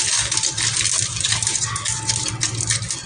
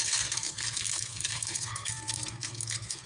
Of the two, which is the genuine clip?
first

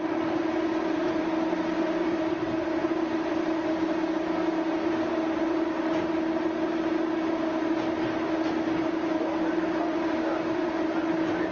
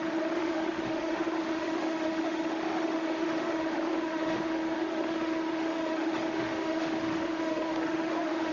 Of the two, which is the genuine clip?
first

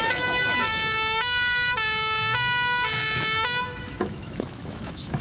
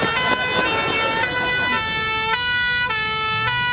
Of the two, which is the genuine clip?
second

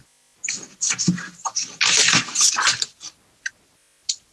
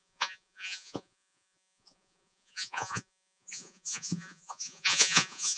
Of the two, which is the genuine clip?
first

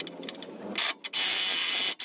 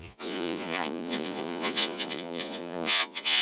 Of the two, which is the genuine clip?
first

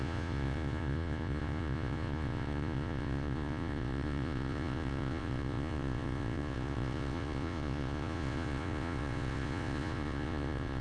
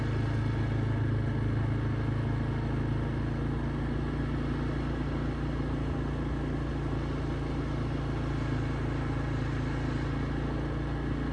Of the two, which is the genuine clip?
second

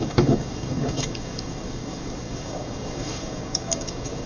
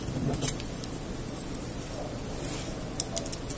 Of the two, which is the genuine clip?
second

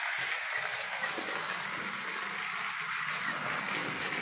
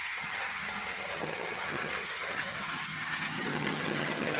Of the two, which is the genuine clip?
first